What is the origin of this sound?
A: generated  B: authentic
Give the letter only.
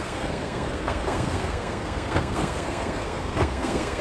A